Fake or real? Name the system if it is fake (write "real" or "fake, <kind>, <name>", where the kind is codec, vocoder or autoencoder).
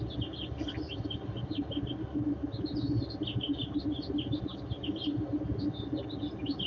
real